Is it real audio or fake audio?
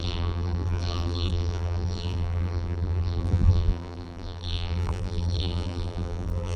fake